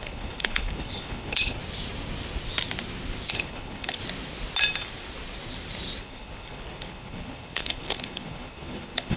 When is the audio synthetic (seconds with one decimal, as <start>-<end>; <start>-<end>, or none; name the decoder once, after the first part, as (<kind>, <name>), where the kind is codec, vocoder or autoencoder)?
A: 0.0-1.6 (codec, HILCodec); 3.3-4.0; 6.0-9.2